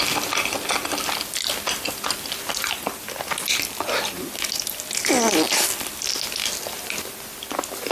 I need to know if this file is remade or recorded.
recorded